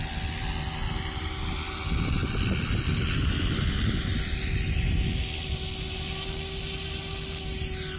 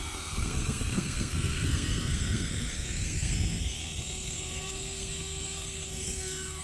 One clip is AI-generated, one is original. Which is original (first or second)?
first